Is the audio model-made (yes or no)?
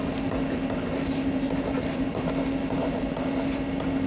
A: no